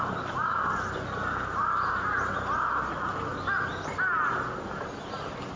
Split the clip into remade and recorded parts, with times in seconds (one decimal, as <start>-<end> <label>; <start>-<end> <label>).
0.0-5.6 recorded